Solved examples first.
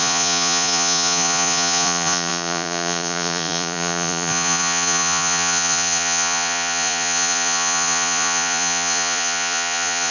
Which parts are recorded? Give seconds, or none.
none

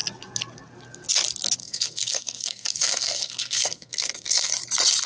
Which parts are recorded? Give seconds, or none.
0.0-1.6; 4.5-5.1

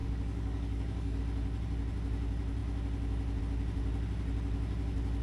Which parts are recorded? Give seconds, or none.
1.2-5.2